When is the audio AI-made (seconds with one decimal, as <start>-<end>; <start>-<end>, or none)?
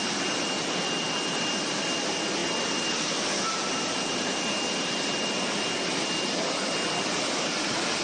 none